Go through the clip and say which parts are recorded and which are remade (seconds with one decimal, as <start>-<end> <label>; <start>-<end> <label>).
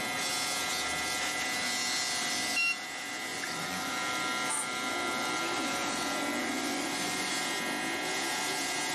0.0-3.3 recorded; 3.3-3.9 remade; 3.9-6.4 recorded; 6.4-7.3 remade; 7.3-8.9 recorded